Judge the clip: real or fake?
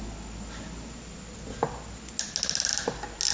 real